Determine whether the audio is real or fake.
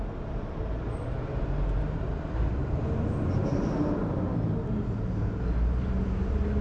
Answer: real